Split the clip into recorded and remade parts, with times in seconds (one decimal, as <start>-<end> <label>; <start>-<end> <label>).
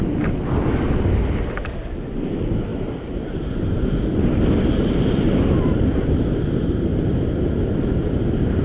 0.0-2.7 recorded; 2.7-3.7 remade; 3.7-8.6 recorded